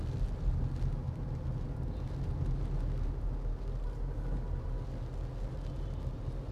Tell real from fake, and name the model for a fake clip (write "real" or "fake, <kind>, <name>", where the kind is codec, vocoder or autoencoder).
real